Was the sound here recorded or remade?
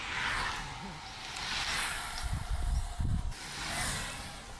recorded